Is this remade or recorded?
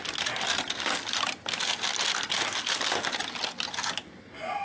recorded